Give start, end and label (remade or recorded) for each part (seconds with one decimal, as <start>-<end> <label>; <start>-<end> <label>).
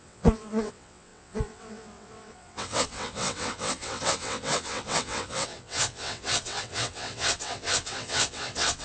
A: 0.0-8.8 remade